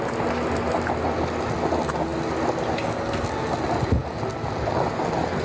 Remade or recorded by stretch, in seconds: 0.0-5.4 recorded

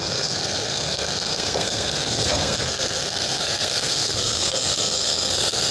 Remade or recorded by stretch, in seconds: 0.0-5.7 remade

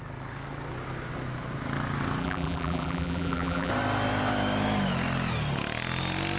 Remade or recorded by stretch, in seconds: 0.0-2.2 recorded; 2.2-3.7 remade; 3.7-6.4 recorded

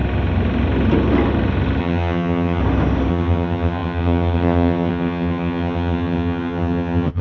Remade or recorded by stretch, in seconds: 0.0-1.8 recorded; 1.8-2.6 remade; 2.6-3.1 recorded; 3.1-7.2 remade